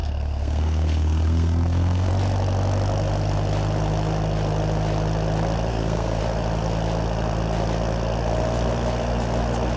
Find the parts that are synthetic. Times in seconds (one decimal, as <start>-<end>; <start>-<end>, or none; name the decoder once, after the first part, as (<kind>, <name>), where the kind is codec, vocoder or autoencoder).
0.0-2.1 (codec, SNAC); 5.7-6.2

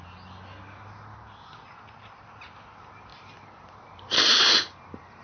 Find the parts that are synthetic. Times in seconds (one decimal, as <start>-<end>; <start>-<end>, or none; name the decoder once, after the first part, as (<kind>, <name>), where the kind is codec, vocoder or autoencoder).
3.1-4.4 (vocoder, BigVGAN v2)

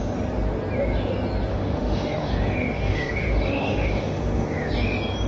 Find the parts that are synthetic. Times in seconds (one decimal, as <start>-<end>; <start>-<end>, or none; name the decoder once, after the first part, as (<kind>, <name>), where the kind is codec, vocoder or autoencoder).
1.5-4.7 (autoencoder, DAC-VAE)